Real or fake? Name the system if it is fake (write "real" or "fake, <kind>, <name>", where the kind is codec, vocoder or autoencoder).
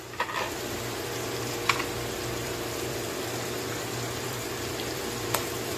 fake, vocoder, BigVGAN v2